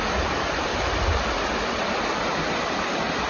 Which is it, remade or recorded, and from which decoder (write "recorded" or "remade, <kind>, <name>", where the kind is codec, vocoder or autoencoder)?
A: recorded